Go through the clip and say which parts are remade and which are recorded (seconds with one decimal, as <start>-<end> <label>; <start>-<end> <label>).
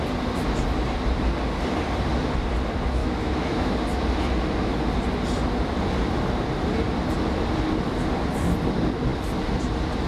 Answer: 0.0-3.0 recorded; 3.0-3.7 remade; 3.7-10.1 recorded